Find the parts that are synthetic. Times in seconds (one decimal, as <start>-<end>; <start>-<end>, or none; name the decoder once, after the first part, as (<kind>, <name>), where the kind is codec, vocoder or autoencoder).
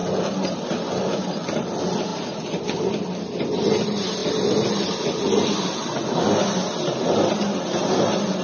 none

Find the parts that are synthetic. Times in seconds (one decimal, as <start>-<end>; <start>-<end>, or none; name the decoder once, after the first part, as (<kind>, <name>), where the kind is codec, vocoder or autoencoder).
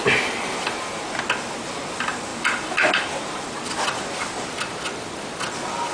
2.3-5.4 (vocoder, BigVGAN v2)